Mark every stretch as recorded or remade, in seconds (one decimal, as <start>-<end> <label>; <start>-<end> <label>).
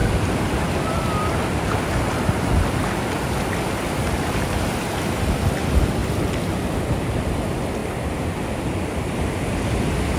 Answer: 0.0-10.2 recorded